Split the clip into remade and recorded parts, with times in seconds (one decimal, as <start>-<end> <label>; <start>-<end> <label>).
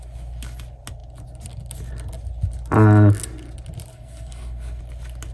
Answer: 0.0-3.9 recorded; 3.9-4.8 remade; 4.8-5.3 recorded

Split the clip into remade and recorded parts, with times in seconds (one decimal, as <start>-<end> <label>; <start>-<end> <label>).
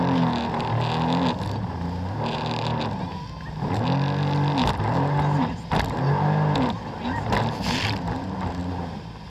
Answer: 0.0-9.3 recorded